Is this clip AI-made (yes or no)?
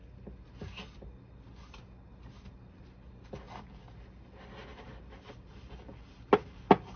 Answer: no